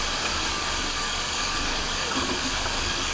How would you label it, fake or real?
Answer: fake